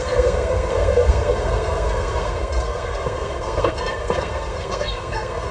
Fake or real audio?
fake